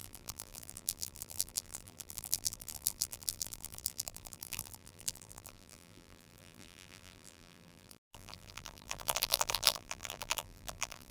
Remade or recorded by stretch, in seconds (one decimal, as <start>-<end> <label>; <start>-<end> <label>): 0.0-11.1 remade